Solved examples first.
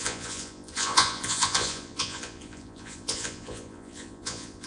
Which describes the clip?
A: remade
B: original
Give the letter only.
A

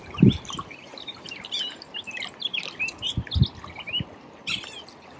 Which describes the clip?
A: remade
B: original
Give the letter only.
B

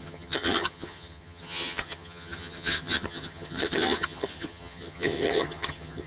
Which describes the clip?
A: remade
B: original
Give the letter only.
A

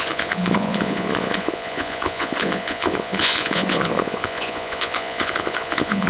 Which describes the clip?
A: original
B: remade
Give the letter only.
B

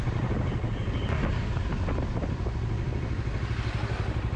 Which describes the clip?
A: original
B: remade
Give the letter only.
A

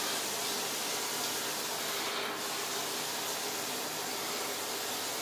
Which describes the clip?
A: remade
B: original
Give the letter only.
B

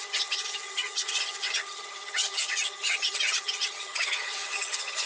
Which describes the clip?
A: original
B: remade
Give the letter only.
B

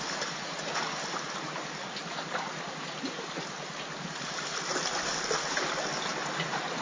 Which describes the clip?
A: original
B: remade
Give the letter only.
A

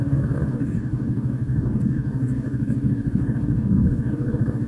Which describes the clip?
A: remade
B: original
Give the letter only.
A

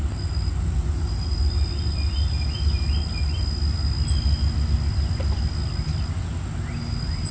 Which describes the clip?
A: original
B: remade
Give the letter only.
A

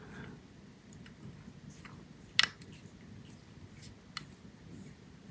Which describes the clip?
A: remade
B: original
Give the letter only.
B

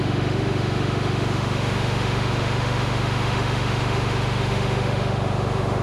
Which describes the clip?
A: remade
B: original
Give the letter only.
A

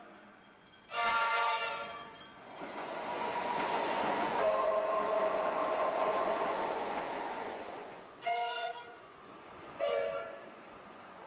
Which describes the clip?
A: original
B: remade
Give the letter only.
B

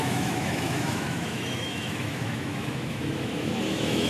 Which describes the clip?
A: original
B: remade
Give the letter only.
B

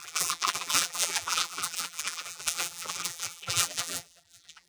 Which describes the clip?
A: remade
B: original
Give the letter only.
A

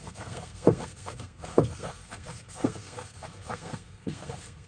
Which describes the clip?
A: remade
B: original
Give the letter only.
A